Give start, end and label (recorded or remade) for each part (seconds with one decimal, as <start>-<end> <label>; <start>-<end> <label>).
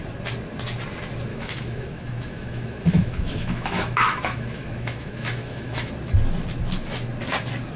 0.0-1.3 recorded; 1.3-5.9 remade; 5.9-7.8 recorded